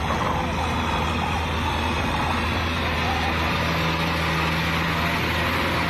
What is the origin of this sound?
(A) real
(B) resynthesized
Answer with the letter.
A